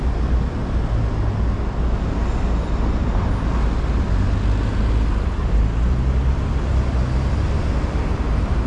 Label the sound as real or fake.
real